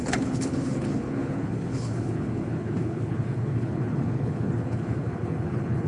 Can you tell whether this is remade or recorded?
remade